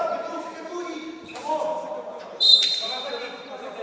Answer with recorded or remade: remade